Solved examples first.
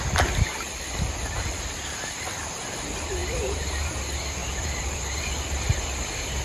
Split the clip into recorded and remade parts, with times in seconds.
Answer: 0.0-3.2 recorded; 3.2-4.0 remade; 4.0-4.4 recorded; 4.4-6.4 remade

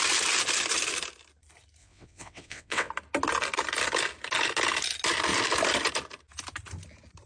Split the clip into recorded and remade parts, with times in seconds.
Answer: 0.0-1.8 recorded; 1.8-2.9 remade; 2.9-7.3 recorded

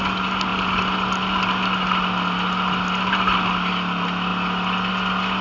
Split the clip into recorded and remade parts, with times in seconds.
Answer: 0.0-5.4 recorded